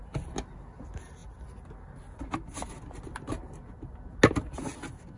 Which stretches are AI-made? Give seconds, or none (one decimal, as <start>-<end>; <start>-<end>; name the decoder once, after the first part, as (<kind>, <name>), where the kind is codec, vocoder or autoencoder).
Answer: none